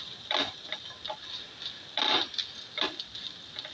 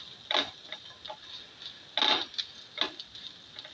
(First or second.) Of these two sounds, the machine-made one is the first